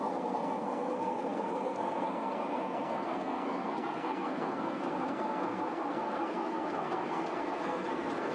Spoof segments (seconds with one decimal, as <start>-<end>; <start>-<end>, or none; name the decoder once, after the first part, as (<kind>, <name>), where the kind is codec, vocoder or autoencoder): 0.0-8.3 (codec, SNAC)